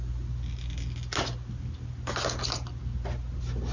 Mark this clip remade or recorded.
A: recorded